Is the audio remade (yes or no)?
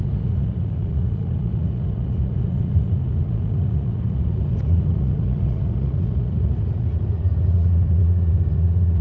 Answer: yes